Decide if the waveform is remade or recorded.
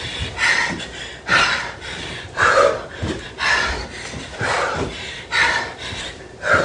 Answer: remade